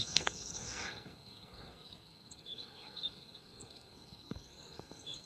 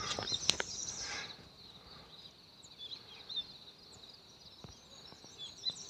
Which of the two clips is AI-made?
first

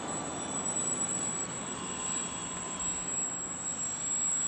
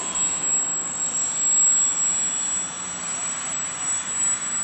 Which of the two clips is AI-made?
first